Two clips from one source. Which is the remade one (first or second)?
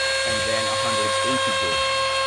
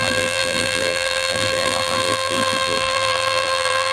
second